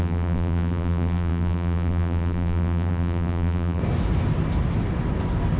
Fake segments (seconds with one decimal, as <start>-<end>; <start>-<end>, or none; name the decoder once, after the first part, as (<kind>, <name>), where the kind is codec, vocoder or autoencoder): 0.0-3.8 (vocoder, BigVGAN v2)